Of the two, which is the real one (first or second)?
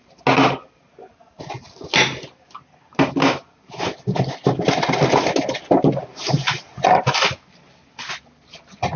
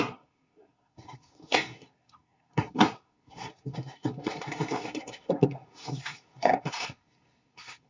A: first